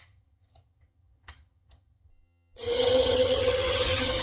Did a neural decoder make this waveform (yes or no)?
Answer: yes